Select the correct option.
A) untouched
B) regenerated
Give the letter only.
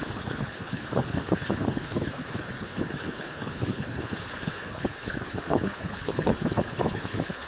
B